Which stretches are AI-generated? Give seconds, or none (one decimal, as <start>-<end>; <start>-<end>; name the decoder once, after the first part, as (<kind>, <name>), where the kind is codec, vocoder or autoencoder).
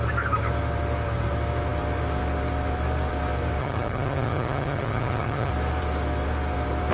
3.6-5.5 (vocoder, HiFi-GAN)